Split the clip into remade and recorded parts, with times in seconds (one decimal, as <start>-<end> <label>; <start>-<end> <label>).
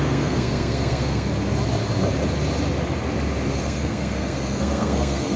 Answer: 0.0-1.3 remade; 1.3-3.6 recorded; 3.6-5.4 remade